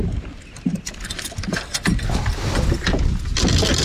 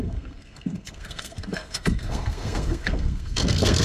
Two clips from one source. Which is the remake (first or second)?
second